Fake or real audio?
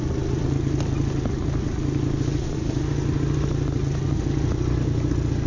real